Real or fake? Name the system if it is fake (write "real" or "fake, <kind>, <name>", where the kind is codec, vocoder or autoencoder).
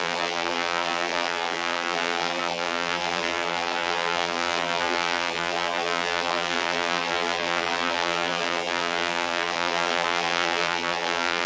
fake, vocoder, BigVGAN v2